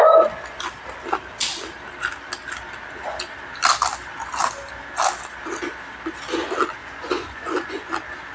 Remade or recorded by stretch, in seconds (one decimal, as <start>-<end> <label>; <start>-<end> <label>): 0.0-6.8 recorded; 6.8-7.9 remade; 7.9-8.3 recorded